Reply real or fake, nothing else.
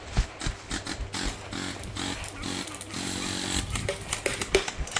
real